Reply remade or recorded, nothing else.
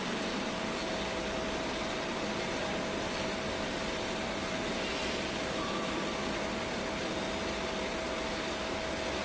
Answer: recorded